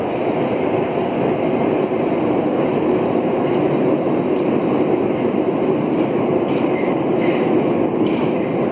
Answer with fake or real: real